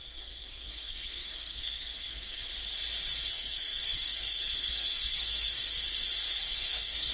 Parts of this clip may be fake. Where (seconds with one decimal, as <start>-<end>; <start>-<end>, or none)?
0.0-2.4; 3.3-5.6; 6.4-7.1